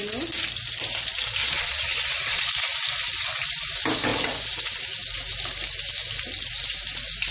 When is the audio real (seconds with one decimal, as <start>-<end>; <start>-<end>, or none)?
0.0-1.4; 2.5-7.3